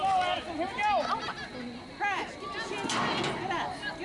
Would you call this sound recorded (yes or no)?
yes